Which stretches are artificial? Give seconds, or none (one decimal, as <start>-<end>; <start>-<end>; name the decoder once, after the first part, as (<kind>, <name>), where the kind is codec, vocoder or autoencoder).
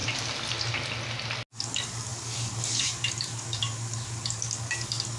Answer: 1.5-5.2 (codec, DAC)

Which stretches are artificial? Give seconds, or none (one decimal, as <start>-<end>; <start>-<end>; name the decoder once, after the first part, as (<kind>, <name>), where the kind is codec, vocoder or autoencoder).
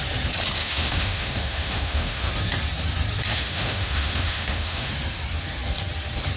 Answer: 0.6-2.3 (autoencoder, DAC-VAE); 3.3-4.9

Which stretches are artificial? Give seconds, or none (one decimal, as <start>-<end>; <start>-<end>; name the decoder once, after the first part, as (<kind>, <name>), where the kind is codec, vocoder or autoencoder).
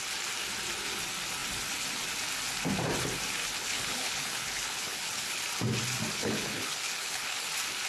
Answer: 3.4-5.4 (codec, HILCodec); 6.2-7.5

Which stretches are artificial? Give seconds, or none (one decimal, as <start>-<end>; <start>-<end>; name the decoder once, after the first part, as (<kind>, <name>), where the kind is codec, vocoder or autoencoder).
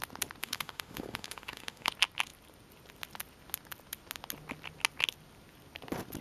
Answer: 0.4-1.9 (autoencoder, DAC-VAE)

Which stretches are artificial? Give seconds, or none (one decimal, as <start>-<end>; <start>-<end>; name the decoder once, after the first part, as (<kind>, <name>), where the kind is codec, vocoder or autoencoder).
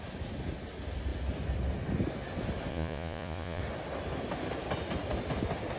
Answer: 2.7-3.6 (vocoder, Vocos)